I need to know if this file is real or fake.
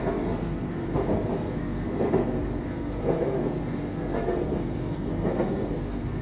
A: fake